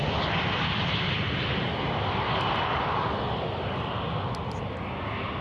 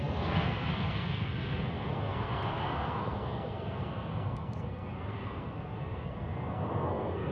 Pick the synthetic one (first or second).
second